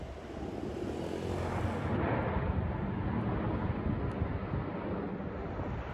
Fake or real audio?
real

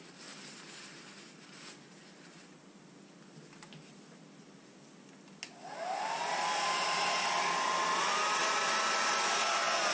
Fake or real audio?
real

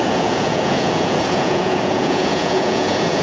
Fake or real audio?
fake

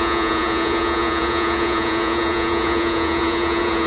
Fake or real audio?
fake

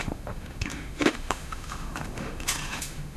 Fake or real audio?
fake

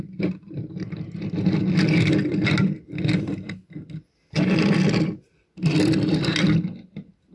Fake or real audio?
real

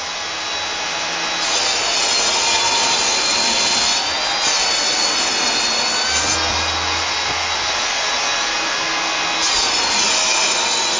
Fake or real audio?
real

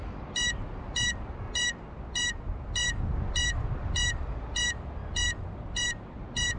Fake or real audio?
real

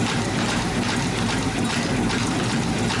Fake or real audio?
real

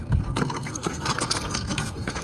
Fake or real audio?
fake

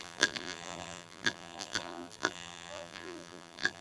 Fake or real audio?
fake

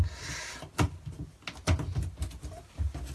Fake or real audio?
real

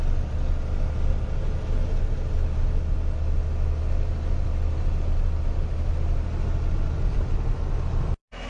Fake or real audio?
real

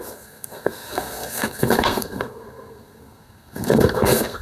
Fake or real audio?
fake